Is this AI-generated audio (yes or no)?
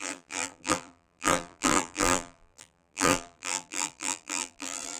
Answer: yes